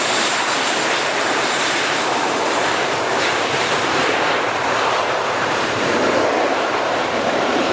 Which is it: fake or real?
fake